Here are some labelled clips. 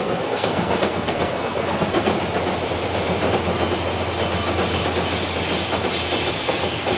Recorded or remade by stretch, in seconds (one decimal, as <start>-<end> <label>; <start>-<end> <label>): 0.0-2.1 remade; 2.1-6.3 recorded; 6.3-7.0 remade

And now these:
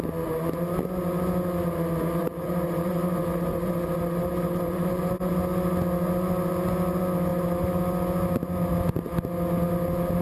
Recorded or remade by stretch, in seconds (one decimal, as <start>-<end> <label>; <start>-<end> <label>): 0.0-2.2 recorded; 2.2-5.3 remade; 5.3-7.3 recorded; 7.3-7.8 remade; 7.8-10.2 recorded

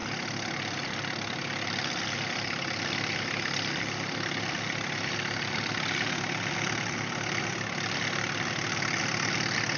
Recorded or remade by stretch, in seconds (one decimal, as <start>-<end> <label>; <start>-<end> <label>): 0.0-9.8 recorded

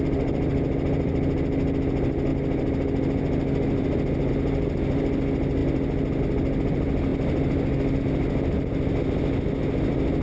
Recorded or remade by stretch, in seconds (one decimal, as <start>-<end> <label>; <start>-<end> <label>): 0.0-10.2 recorded

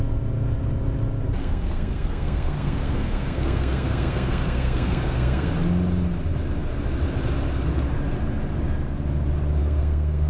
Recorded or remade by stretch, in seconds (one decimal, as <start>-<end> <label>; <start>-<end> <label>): 0.0-1.4 recorded; 1.4-5.5 remade; 5.5-9.6 recorded; 9.6-10.3 remade

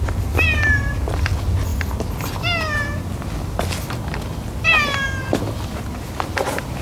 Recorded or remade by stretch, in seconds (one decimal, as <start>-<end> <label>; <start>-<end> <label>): 0.0-6.8 recorded